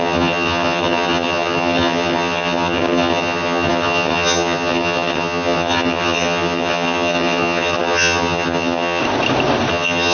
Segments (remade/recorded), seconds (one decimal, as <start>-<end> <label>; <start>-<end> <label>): 0.0-9.0 remade; 9.0-9.7 recorded; 9.7-10.1 remade